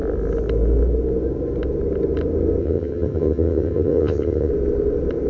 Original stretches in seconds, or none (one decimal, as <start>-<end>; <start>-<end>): 0.0-2.6; 4.5-5.3